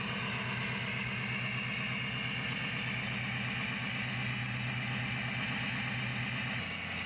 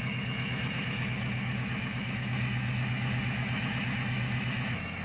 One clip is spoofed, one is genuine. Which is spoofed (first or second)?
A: second